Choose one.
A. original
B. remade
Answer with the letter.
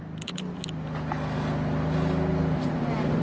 A